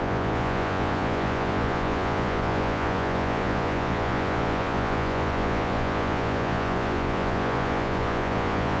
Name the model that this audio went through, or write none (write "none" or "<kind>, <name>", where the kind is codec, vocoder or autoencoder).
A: vocoder, Vocos